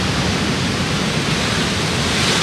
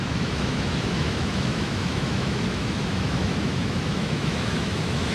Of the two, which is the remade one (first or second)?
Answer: second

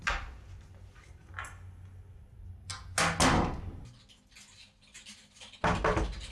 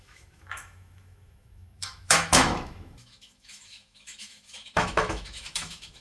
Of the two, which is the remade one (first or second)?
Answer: second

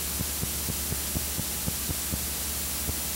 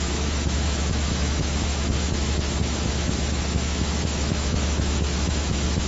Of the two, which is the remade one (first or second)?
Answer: second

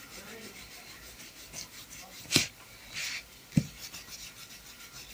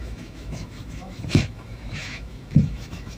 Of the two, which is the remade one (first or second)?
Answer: second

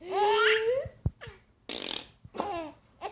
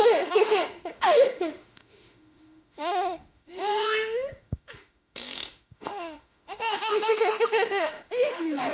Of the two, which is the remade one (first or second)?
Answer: second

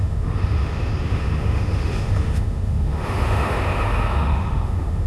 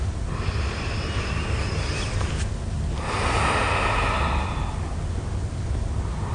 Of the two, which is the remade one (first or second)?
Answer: first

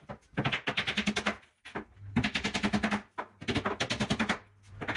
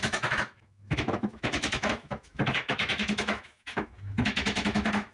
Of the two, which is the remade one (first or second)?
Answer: second